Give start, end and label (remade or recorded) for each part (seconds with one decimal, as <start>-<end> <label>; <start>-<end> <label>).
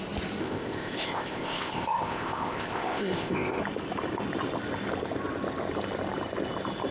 0.0-0.4 recorded; 0.4-3.6 remade; 3.6-6.9 recorded